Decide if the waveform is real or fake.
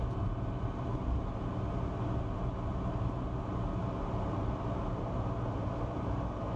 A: real